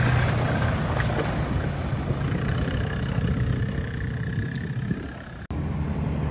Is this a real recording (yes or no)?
yes